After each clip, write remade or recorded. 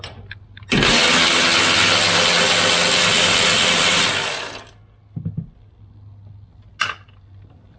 recorded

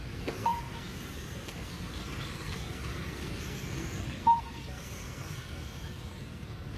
remade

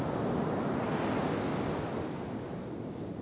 recorded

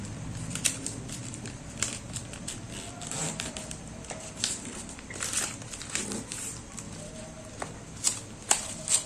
remade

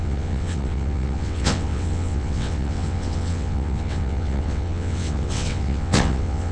remade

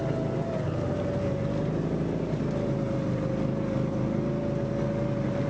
recorded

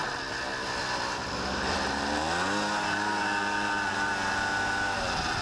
recorded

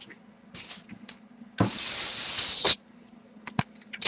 recorded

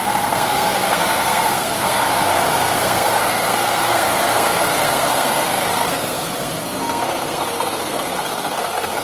remade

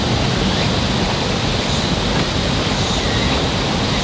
recorded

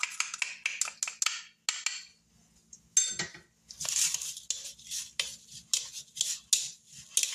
recorded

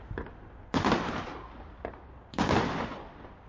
recorded